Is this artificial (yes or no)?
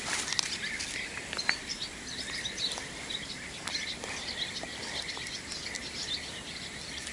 no